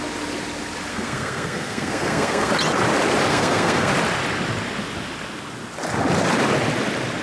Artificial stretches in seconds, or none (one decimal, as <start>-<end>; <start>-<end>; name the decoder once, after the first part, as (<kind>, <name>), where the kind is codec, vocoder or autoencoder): 0.9-2.5 (codec, SNAC); 3.3-3.9